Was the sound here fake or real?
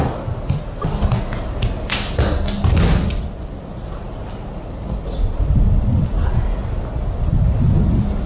real